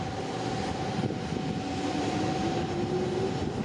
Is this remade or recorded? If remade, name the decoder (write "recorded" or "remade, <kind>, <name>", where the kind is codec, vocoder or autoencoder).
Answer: recorded